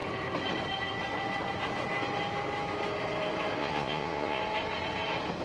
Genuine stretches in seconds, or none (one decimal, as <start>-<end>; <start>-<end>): 0.0-3.6; 4.4-5.4